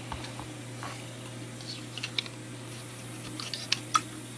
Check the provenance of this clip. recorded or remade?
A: recorded